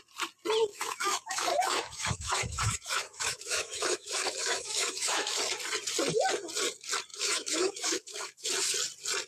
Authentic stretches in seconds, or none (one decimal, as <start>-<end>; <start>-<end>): 0.0-0.7; 5.4-7.1; 8.5-9.3